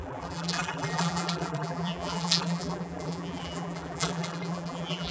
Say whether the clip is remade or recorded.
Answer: remade